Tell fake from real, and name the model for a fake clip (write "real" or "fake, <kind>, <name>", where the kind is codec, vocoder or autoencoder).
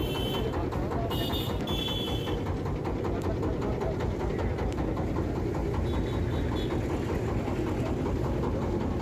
real